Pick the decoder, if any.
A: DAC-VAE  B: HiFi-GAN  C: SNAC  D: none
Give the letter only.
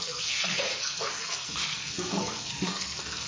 C